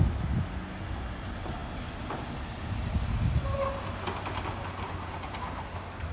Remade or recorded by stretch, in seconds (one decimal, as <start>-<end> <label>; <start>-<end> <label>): 0.0-6.1 recorded